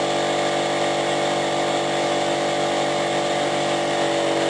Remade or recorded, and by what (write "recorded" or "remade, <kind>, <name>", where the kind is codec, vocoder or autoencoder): recorded